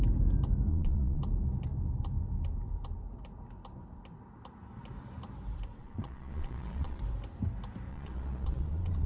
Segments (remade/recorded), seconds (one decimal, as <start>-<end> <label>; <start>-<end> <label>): 0.0-0.7 recorded; 0.7-1.2 remade; 1.2-5.8 recorded; 5.8-7.0 remade; 7.0-7.9 recorded; 7.9-9.1 remade